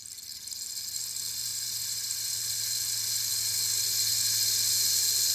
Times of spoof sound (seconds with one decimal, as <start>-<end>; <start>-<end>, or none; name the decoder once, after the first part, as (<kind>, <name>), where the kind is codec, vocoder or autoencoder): 1.5-2.2 (vocoder, BigVGAN v2); 3.3-4.7